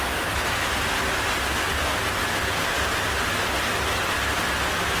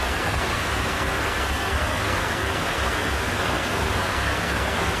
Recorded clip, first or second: first